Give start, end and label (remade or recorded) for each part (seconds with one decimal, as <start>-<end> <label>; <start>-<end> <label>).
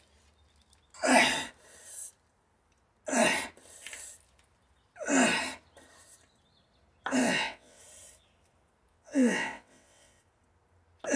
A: 0.0-7.2 recorded; 7.2-7.8 remade; 7.8-8.9 recorded; 8.9-10.2 remade; 10.2-11.2 recorded